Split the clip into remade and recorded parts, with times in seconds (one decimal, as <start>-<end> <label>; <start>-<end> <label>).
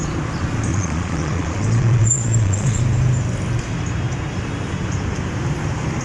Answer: 0.0-0.7 recorded; 0.7-2.8 remade; 2.8-6.0 recorded